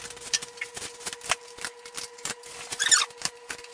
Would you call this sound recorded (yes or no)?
yes